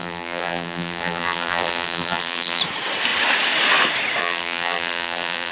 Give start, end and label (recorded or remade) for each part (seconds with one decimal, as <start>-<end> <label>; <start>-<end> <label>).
0.0-2.6 remade; 2.6-4.2 recorded; 4.2-5.5 remade